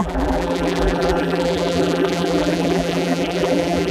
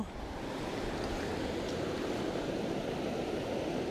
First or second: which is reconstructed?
first